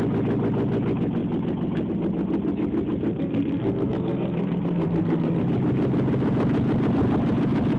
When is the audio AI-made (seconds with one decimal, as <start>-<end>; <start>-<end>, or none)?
3.1-5.4